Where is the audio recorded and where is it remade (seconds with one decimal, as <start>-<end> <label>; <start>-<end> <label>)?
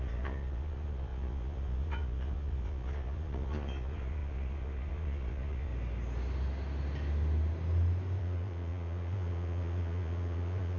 0.0-5.7 remade; 5.7-8.2 recorded; 8.2-10.8 remade